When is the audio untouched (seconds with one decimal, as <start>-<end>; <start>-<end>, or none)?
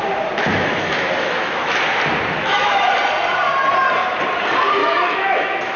0.0-0.5; 1.7-2.4; 2.9-4.8